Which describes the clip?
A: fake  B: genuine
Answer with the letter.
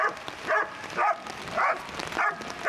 B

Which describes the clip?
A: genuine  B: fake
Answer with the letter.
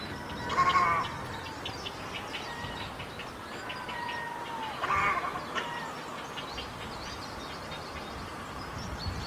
A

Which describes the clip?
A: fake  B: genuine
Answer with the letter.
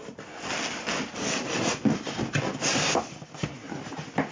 B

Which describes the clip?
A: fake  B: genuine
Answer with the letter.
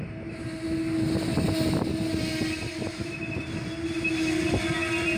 B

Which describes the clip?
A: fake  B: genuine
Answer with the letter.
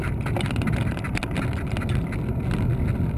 B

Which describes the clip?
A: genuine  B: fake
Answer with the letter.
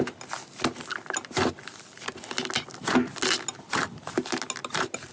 A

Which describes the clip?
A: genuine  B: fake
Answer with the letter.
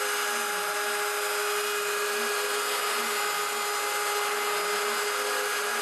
A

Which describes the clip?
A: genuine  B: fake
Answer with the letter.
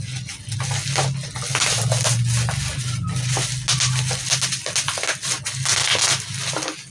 A